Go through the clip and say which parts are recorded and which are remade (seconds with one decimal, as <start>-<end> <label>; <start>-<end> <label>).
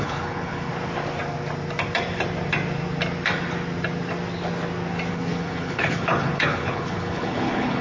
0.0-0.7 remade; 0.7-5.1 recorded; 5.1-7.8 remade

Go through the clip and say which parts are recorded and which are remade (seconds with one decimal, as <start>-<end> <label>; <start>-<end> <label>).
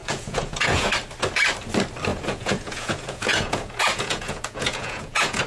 0.0-0.9 remade; 0.9-2.1 recorded; 2.1-5.5 remade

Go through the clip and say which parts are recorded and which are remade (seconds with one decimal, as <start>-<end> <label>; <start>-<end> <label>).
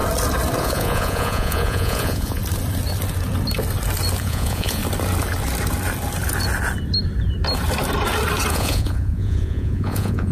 0.0-0.6 recorded; 0.6-2.4 remade; 2.4-4.2 recorded; 4.2-4.8 remade; 4.8-8.5 recorded; 8.5-10.3 remade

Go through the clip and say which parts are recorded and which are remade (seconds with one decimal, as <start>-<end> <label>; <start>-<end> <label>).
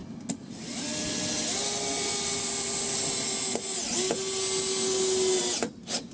0.0-6.1 recorded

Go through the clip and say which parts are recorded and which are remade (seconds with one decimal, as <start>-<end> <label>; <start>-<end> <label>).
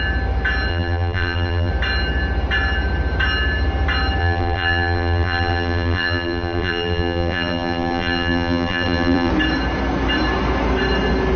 0.0-0.7 recorded; 0.7-1.7 remade; 1.7-4.2 recorded; 4.2-9.3 remade; 9.3-11.4 recorded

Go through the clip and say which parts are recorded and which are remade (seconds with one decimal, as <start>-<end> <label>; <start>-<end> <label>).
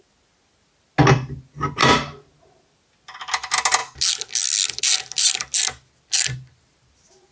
0.0-7.3 recorded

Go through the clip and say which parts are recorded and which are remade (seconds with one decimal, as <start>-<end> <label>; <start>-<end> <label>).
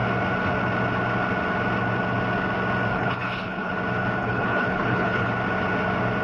0.0-2.9 recorded; 2.9-3.7 remade; 3.7-4.2 recorded; 4.2-5.3 remade; 5.3-6.2 recorded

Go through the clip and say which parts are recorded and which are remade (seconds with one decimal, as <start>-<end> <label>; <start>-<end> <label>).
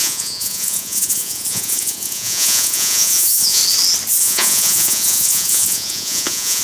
0.0-3.6 remade; 3.6-4.2 recorded; 4.2-6.6 remade